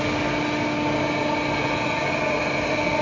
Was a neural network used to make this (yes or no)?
no